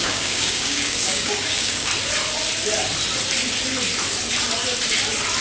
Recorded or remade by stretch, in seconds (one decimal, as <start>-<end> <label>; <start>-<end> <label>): 0.0-1.9 remade; 1.9-5.4 recorded